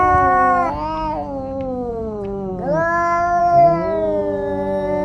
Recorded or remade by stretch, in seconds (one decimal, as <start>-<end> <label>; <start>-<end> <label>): 0.0-1.9 recorded; 1.9-2.5 remade; 2.5-5.0 recorded